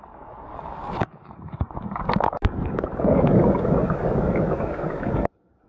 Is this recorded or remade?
remade